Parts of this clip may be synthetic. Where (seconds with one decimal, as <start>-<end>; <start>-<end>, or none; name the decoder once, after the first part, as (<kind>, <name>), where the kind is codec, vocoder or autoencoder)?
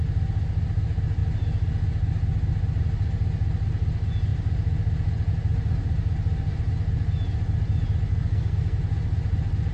8.1-8.8 (codec, SNAC)